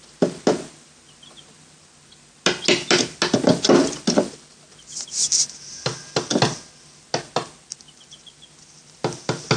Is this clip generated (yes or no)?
no